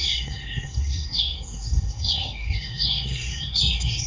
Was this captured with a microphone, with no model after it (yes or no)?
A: no